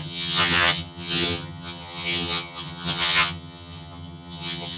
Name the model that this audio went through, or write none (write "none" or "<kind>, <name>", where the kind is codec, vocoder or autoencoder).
vocoder, HiFi-GAN